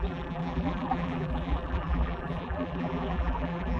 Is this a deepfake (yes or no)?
yes